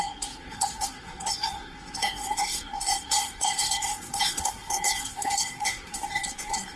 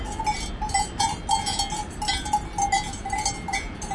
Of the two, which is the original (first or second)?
second